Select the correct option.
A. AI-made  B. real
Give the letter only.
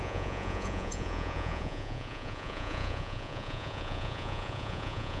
A